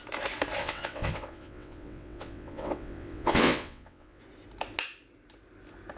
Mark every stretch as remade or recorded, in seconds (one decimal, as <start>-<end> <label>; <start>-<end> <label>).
0.0-0.6 recorded; 0.6-4.2 remade; 4.2-6.0 recorded